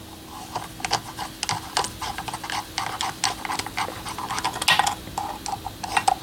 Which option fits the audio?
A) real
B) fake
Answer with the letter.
A